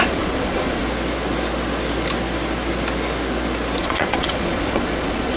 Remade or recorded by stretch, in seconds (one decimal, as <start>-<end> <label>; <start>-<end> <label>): 0.0-0.8 remade; 0.8-3.8 recorded; 3.8-5.4 remade